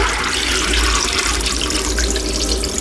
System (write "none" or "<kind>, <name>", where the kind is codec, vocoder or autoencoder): none